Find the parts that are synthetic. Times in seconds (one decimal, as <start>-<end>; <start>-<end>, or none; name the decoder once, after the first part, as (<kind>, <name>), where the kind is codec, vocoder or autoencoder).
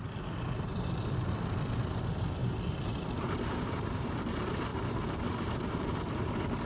2.4-4.2 (vocoder, BigVGAN v2); 4.7-5.2